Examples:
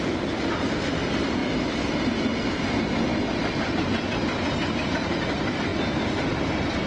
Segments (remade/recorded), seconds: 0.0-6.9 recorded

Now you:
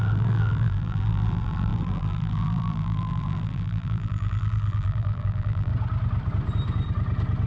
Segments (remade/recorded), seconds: 0.0-5.7 remade; 5.7-7.5 recorded

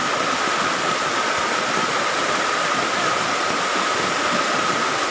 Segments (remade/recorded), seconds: 0.0-3.1 remade; 3.1-5.1 recorded

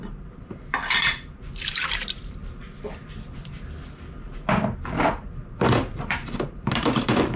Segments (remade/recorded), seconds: 0.0-2.4 remade; 2.4-5.4 recorded; 5.4-7.4 remade

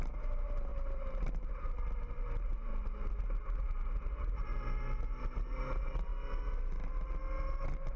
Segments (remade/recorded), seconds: 0.0-2.7 remade; 2.7-4.1 recorded; 4.1-4.5 remade; 4.5-5.4 recorded; 5.4-6.1 remade; 6.1-7.6 recorded; 7.6-8.0 remade